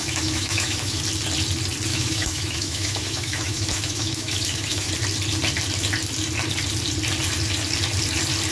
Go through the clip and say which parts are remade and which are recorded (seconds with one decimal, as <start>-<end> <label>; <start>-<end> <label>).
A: 0.0-1.0 remade; 1.0-1.9 recorded; 1.9-4.9 remade; 4.9-8.5 recorded